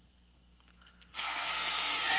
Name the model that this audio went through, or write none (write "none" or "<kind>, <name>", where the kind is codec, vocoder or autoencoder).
codec, SNAC